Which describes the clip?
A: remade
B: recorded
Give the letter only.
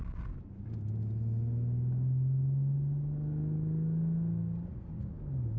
B